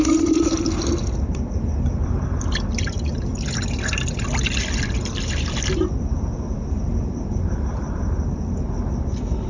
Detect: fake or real fake